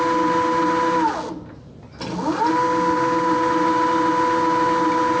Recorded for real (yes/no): yes